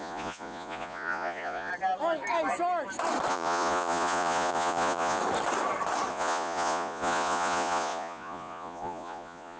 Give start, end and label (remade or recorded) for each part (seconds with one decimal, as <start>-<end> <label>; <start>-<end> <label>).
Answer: 0.0-1.7 remade; 1.7-3.3 recorded; 3.3-5.2 remade; 5.2-6.1 recorded; 6.1-9.6 remade